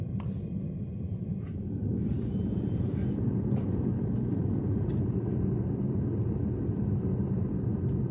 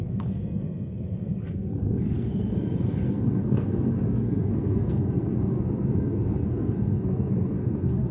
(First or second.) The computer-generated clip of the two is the second